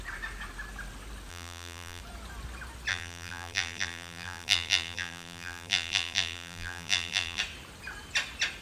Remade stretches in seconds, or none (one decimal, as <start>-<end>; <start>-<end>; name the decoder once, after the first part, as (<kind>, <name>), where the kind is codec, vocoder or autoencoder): 1.3-2.0 (vocoder, BigVGAN v2); 2.9-7.4